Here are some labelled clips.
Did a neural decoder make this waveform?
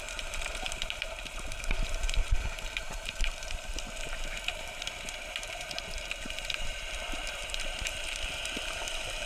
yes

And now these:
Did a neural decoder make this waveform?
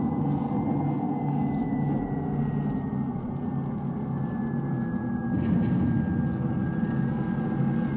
no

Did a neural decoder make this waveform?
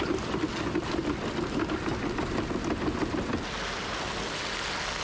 no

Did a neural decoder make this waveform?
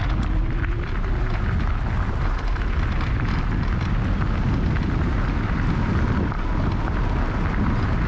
no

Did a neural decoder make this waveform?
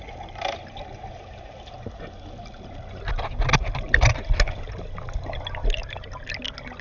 no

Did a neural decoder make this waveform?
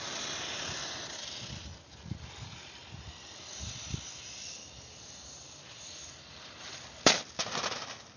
no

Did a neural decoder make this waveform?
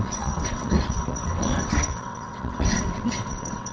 yes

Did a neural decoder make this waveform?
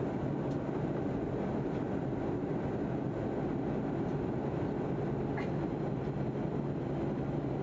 no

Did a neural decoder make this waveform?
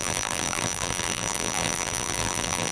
yes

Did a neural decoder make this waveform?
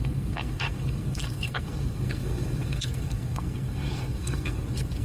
yes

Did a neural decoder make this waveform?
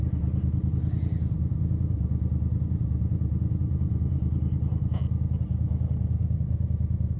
no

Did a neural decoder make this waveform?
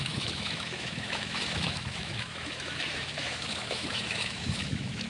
yes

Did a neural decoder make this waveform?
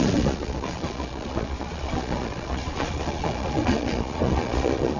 yes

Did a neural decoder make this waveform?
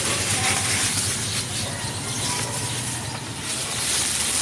no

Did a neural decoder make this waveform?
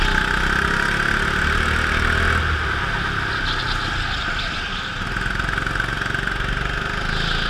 no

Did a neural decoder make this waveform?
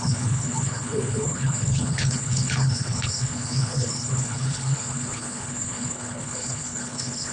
yes